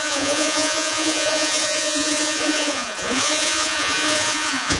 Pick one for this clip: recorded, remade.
remade